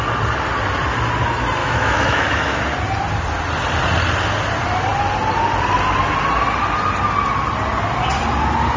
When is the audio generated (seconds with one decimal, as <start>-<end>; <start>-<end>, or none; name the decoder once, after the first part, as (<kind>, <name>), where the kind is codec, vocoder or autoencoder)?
1.6-2.6 (autoencoder, DAC-VAE)